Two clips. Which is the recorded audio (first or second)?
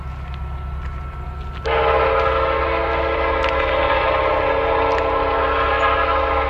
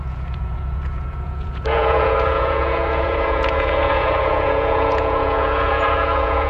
first